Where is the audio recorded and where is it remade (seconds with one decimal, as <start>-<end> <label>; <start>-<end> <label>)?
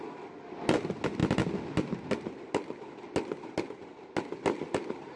0.0-5.2 recorded